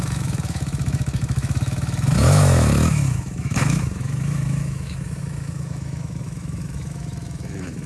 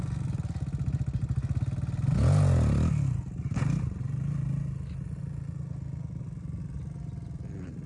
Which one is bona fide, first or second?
second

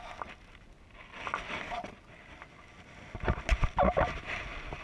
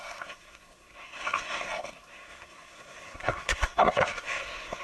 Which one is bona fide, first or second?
first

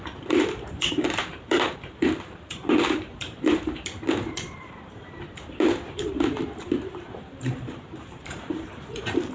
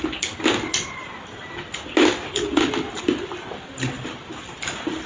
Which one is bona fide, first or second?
second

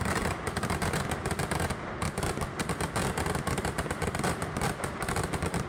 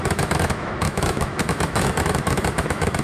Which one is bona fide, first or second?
first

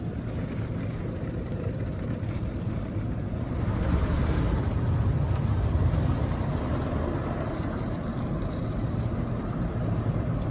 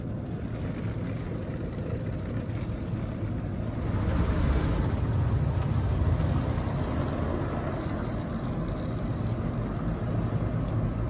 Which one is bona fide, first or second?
second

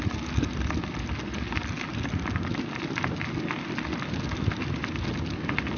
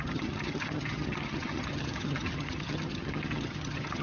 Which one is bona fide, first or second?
first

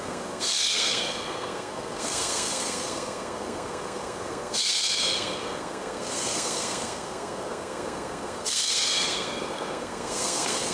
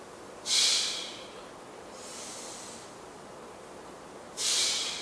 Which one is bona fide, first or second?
second